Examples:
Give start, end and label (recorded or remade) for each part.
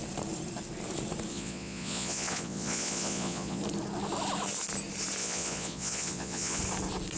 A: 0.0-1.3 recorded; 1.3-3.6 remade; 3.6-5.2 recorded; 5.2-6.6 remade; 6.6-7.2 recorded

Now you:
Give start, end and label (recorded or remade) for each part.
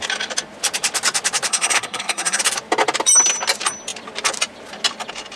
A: 0.0-1.5 recorded; 1.5-2.4 remade; 2.4-5.4 recorded